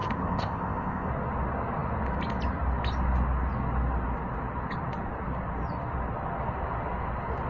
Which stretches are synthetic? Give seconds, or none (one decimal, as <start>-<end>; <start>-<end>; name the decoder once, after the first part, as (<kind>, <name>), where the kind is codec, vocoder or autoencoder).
0.0-1.1 (codec, ZipCodec)

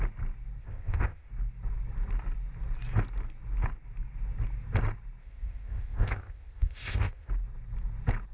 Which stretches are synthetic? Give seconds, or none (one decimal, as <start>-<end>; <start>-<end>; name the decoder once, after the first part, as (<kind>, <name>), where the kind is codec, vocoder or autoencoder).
0.6-1.3 (codec, ZipCodec); 5.2-7.3

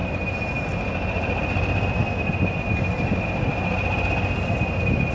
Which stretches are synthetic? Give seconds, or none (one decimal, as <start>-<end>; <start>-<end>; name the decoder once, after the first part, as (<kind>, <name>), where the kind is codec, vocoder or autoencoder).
none

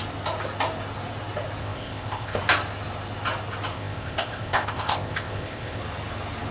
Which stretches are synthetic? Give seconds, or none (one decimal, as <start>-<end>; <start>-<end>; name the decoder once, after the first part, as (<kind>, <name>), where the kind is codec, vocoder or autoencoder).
1.6-2.4 (codec, ZipCodec); 3.7-5.8

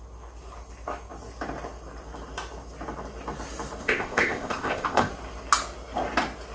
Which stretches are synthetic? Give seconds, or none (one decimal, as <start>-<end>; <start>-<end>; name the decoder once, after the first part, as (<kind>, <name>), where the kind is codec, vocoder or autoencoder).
3.8-5.1 (codec, ZipCodec)

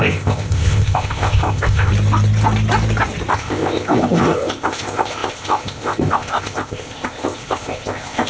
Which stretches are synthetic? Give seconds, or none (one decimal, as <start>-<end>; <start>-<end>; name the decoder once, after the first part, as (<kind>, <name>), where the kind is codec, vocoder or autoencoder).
0.0-1.9 (codec, ZipCodec); 3.3-8.3

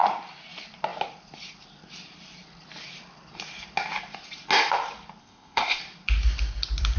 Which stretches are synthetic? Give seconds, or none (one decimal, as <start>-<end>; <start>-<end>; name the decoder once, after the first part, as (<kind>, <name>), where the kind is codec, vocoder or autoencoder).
5.2-5.8 (codec, ZipCodec)

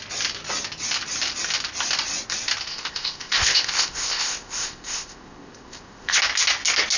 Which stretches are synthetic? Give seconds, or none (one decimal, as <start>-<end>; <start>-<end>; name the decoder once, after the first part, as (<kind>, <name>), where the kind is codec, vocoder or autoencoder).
2.7-6.2 (codec, ZipCodec)